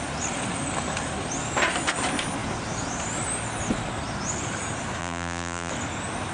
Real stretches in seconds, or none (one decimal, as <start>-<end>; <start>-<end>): 0.0-5.0; 5.7-6.3